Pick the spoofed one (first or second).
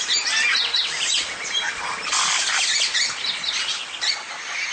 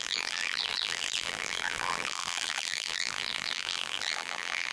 second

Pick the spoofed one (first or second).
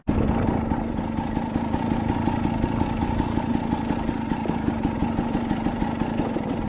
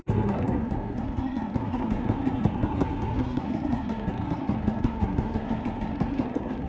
second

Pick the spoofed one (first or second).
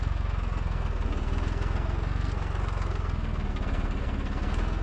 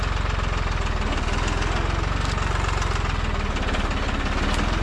first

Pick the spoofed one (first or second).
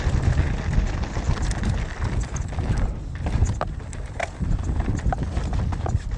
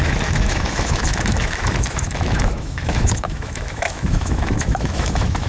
second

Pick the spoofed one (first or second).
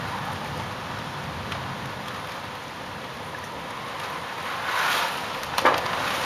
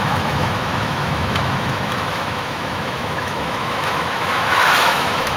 second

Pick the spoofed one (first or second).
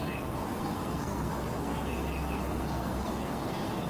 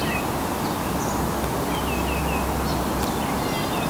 first